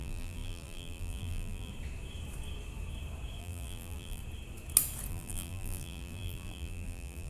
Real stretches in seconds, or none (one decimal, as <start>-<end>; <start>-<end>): 1.7-3.4; 4.2-5.1